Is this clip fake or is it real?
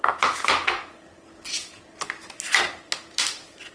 real